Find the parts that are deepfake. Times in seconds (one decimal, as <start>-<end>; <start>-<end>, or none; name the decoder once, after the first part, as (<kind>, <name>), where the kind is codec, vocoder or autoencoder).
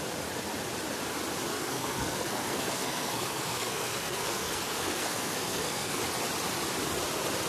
1.5-6.0 (codec, SNAC)